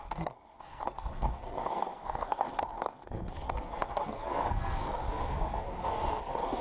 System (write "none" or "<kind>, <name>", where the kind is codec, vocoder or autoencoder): codec, SNAC